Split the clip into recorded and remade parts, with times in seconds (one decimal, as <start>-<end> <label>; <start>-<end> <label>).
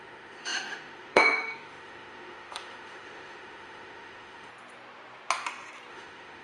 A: 0.0-4.5 remade; 4.5-5.9 recorded; 5.9-6.4 remade